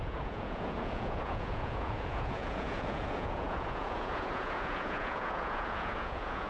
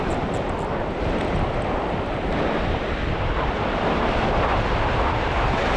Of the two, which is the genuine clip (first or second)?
second